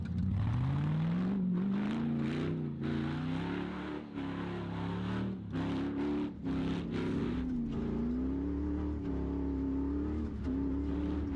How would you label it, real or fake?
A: real